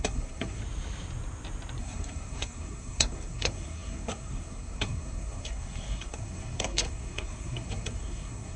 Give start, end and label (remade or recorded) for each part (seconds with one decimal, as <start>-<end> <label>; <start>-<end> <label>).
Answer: 0.0-0.6 remade; 0.6-1.8 recorded; 1.8-8.6 remade